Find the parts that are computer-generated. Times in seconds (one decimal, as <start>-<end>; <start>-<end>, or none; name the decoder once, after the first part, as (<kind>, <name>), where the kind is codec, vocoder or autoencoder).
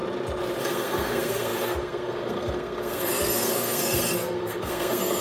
0.6-5.2 (codec, SNAC)